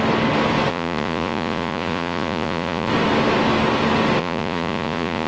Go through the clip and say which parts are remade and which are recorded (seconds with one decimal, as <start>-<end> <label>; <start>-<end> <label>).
0.0-0.7 recorded; 0.7-2.9 remade; 2.9-4.2 recorded; 4.2-5.3 remade